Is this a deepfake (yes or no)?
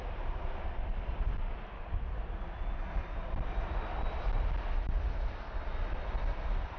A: no